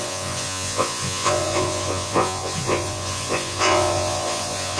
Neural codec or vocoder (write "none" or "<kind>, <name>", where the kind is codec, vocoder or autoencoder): vocoder, Vocos